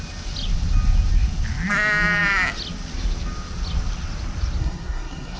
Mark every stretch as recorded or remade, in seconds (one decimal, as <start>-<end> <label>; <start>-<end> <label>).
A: 0.0-4.6 recorded; 4.6-5.4 remade